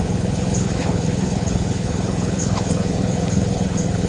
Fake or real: fake